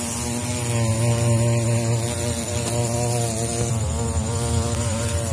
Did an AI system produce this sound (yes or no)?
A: no